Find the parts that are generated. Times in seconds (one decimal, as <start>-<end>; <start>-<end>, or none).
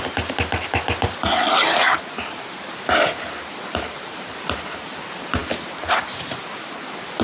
none